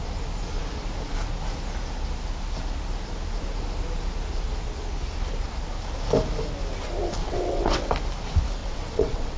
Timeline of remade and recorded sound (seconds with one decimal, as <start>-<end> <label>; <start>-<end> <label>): 0.0-7.2 recorded; 7.2-7.9 remade; 7.9-8.6 recorded; 8.6-9.4 remade